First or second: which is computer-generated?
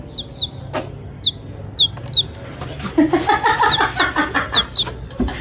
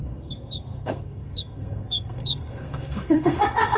second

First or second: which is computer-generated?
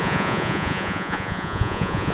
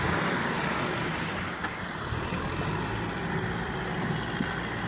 first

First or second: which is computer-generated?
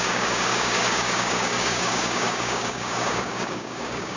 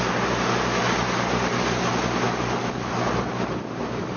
first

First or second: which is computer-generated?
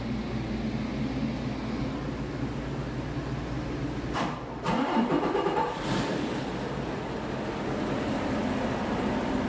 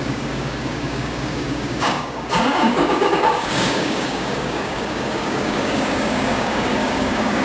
second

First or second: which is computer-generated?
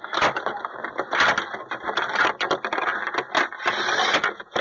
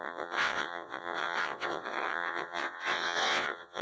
second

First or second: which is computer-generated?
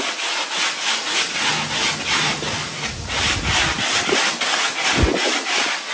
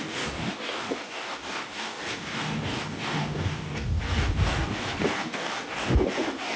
second